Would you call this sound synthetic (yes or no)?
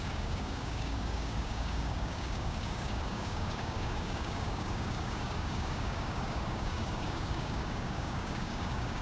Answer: yes